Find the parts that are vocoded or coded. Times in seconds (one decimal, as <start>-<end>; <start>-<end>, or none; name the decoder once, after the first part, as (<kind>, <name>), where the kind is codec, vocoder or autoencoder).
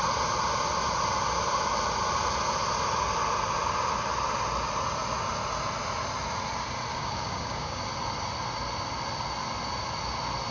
6.9-7.8 (codec, DAC)